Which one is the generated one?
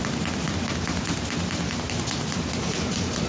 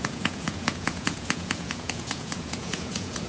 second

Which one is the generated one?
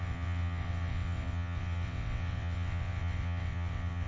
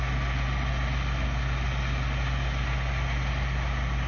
first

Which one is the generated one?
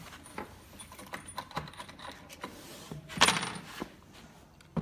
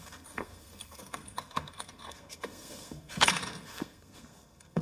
second